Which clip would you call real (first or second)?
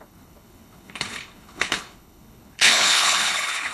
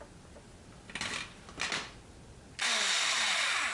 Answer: second